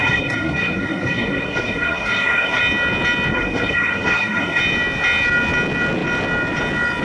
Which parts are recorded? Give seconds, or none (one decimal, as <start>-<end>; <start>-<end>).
2.6-3.3; 4.6-7.0